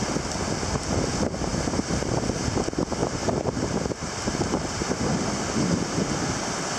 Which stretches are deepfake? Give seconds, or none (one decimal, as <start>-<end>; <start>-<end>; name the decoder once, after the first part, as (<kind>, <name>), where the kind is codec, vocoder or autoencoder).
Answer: 3.0-5.0 (vocoder, BigVGAN v2)